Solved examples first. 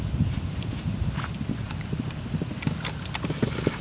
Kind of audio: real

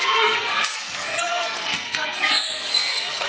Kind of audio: fake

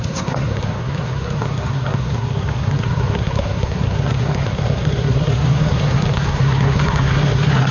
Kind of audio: fake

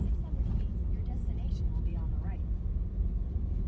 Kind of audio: real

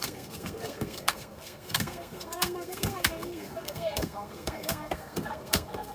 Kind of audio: fake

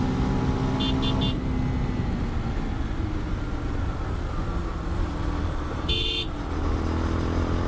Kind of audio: real